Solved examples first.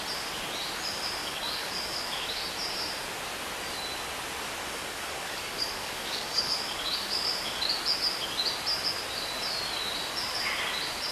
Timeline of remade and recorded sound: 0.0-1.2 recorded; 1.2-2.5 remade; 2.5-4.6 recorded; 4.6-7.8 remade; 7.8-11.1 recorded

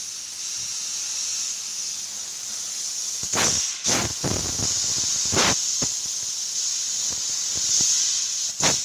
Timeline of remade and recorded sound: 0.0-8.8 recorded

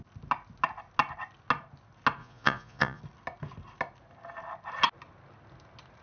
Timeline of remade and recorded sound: 0.0-2.2 recorded; 2.2-3.0 remade; 3.0-6.0 recorded

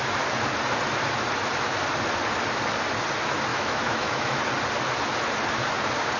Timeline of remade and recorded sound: 0.0-3.5 recorded; 3.5-4.4 remade; 4.4-6.2 recorded